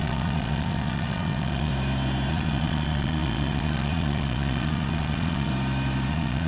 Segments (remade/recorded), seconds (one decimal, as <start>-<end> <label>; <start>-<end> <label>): 0.0-1.7 remade; 1.7-2.3 recorded; 2.3-5.5 remade; 5.5-6.1 recorded; 6.1-6.5 remade